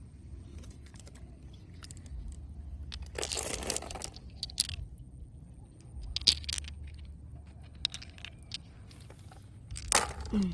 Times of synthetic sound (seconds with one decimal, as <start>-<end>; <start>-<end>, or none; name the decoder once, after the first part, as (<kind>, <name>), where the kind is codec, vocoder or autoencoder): 0.5-1.1 (vocoder, Vocos)